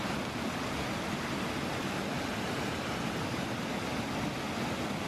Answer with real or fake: real